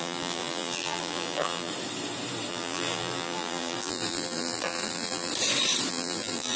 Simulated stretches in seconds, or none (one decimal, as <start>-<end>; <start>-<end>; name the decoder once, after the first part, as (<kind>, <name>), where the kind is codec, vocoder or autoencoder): 0.0-1.7 (vocoder, BigVGAN v2); 2.5-5.3; 5.9-6.6